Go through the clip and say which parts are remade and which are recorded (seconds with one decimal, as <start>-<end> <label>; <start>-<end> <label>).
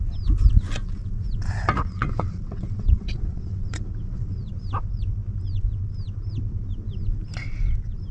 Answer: 0.0-1.6 recorded; 1.6-4.5 remade; 4.5-8.1 recorded